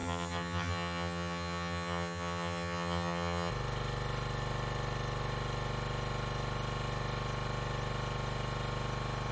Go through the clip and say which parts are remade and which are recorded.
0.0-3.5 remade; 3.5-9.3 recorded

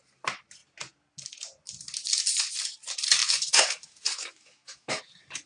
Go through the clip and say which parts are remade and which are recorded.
0.0-3.2 recorded; 3.2-5.0 remade; 5.0-5.5 recorded

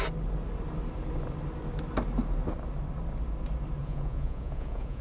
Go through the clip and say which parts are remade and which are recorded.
0.0-3.8 recorded; 3.8-5.0 remade

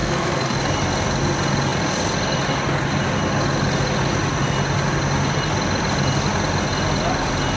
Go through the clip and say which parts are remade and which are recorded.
0.0-0.6 remade; 0.6-7.6 recorded

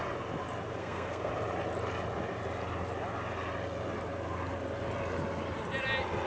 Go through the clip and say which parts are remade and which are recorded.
0.0-0.8 recorded; 0.8-1.3 remade; 1.3-6.3 recorded

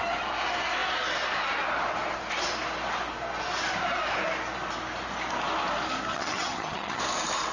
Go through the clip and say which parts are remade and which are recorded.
0.0-6.1 recorded; 6.1-7.0 remade; 7.0-7.5 recorded

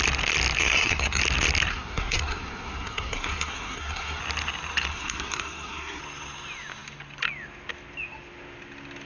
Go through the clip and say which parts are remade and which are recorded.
0.0-0.6 recorded; 0.6-1.2 remade; 1.2-1.7 recorded; 1.7-4.2 remade; 4.2-4.9 recorded; 4.9-6.0 remade; 6.0-9.1 recorded